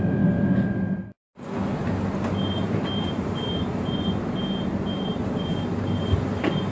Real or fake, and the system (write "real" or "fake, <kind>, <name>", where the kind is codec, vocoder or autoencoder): real